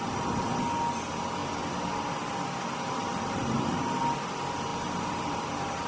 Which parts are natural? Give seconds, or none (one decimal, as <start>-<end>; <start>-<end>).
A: 0.0-3.0; 4.0-4.7